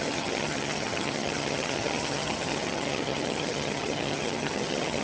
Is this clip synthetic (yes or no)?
yes